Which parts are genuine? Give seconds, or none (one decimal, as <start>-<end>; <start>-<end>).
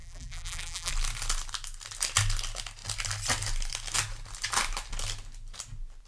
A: 0.9-6.1